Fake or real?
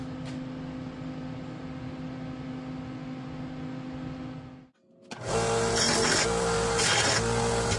real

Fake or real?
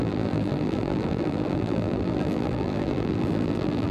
fake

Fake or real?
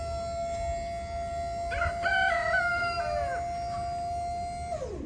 real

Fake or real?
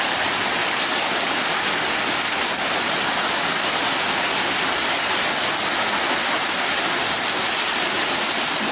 real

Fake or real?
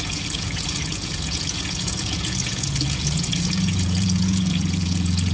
fake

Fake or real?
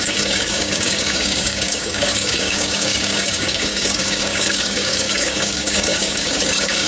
fake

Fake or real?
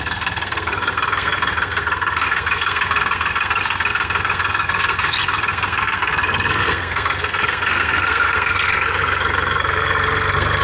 fake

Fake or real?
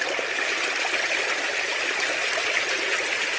real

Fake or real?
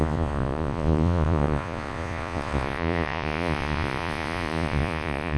fake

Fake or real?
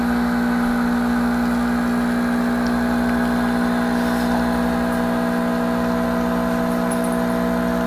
real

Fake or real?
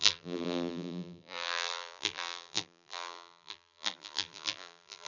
fake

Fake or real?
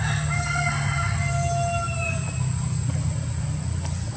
real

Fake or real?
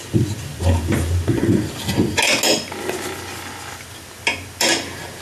real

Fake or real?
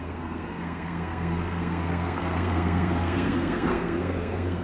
fake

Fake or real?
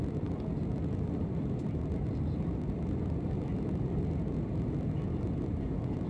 fake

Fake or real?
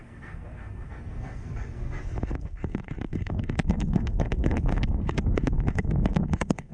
fake